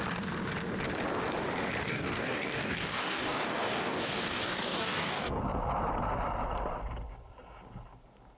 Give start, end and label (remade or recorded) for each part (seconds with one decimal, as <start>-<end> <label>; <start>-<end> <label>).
0.0-1.8 recorded; 1.8-5.4 remade; 5.4-8.4 recorded